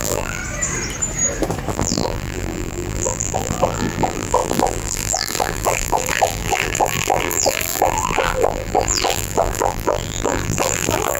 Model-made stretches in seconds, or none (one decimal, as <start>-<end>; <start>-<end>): 0.0-0.4; 1.7-11.2